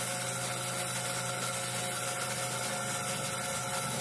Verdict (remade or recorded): recorded